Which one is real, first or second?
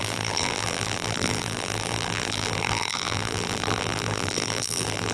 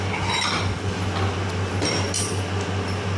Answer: second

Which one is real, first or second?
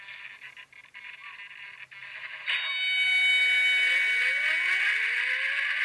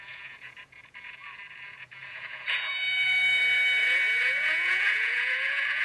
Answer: first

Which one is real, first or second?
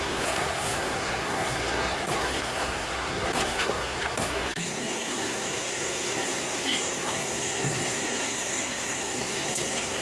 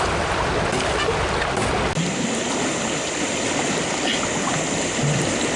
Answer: second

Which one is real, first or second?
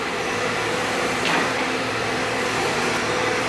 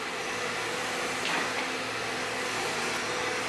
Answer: second